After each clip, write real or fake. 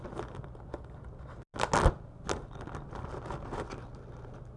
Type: real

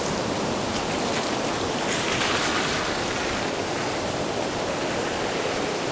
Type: real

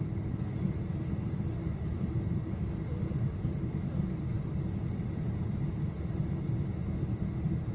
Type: real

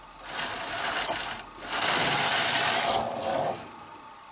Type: real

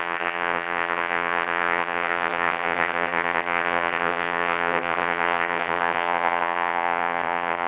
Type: fake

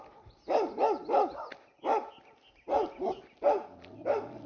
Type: real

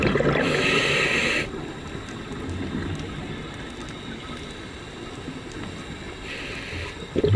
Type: real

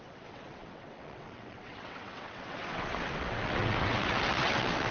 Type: fake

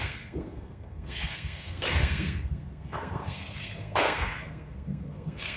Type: fake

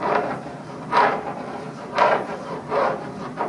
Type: fake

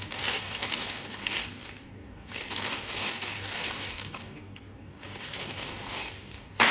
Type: fake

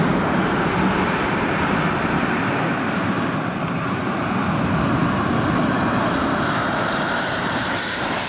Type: fake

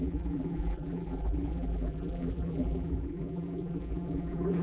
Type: fake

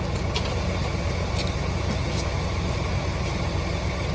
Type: real